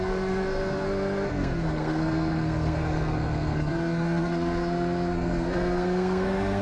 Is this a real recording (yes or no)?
no